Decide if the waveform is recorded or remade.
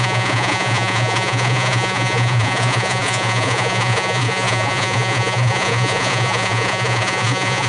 remade